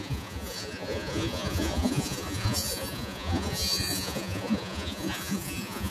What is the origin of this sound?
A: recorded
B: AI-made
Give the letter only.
B